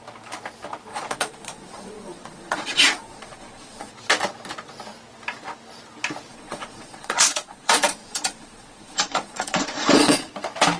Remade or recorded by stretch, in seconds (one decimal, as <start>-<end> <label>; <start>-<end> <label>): 0.0-0.9 recorded; 0.9-3.9 remade; 3.9-6.3 recorded; 6.3-10.3 remade; 10.3-10.8 recorded